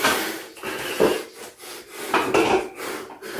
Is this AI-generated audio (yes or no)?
no